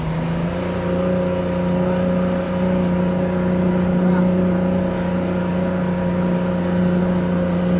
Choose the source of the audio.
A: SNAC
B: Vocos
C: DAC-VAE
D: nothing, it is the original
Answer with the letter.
D